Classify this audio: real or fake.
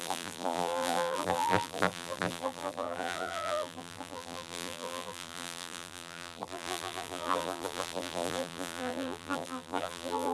fake